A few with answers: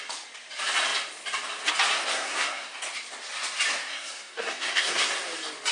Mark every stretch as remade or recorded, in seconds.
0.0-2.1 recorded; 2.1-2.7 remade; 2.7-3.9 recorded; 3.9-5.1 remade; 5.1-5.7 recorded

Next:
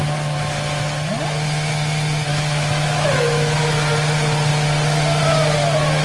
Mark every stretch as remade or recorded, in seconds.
0.0-2.3 recorded; 2.3-3.6 remade; 3.6-6.0 recorded

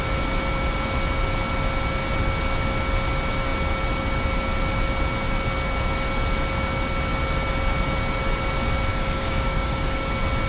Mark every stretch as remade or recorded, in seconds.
0.0-8.9 recorded; 8.9-10.1 remade; 10.1-10.5 recorded

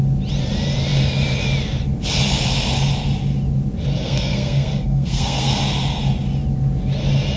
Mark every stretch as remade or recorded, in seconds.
0.0-4.0 recorded; 4.0-5.5 remade; 5.5-7.4 recorded

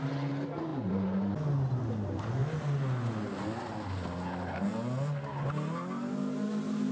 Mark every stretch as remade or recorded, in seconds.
0.0-6.9 recorded

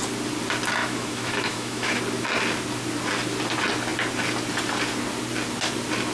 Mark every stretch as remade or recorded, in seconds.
0.0-0.8 recorded; 0.8-2.0 remade; 2.0-6.1 recorded

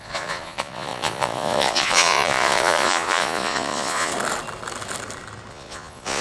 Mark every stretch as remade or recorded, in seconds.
0.0-4.1 remade; 4.1-5.5 recorded; 5.5-6.2 remade

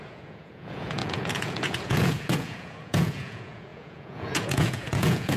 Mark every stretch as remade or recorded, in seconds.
0.0-5.4 remade